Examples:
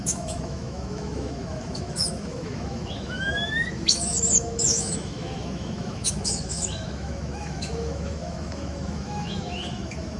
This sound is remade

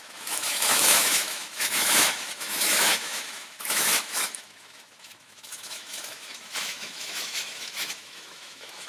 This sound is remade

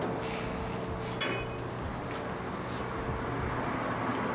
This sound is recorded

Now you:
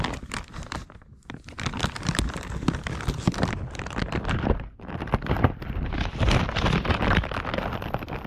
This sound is recorded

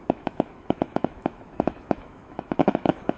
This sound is remade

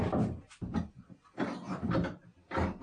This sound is recorded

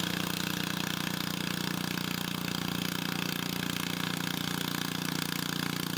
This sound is recorded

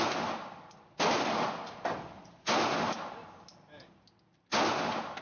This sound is recorded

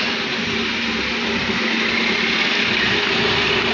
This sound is recorded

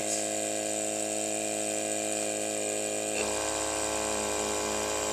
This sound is recorded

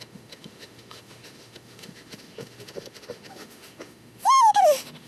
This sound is remade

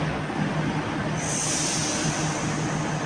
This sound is recorded